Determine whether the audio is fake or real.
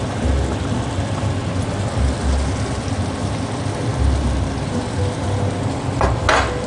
real